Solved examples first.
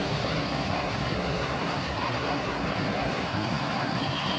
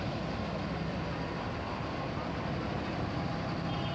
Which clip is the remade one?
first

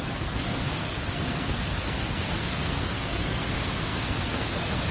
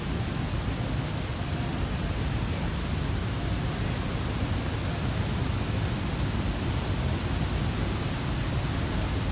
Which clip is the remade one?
first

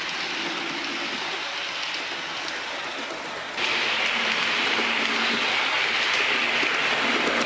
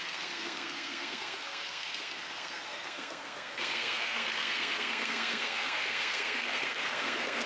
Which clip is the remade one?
second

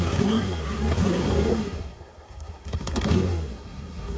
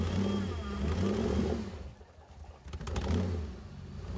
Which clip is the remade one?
first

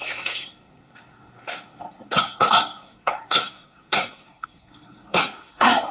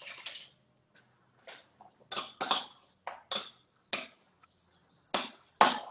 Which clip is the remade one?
first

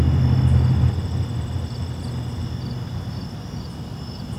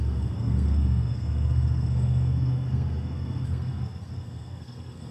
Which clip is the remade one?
second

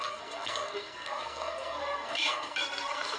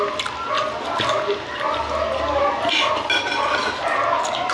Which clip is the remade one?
first